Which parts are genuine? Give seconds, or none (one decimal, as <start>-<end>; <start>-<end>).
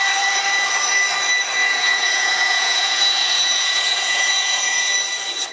0.0-1.6; 4.9-5.5